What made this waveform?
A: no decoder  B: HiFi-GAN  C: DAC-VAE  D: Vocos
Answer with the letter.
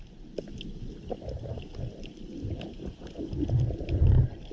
A